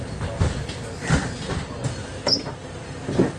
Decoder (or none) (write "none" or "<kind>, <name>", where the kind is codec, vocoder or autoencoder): none